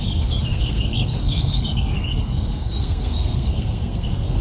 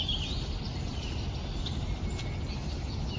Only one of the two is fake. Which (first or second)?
first